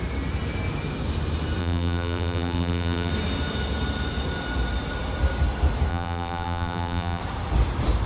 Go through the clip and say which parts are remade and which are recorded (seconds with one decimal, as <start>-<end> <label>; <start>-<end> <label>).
0.0-1.6 recorded; 1.6-3.1 remade; 3.1-5.9 recorded; 5.9-7.2 remade; 7.2-8.1 recorded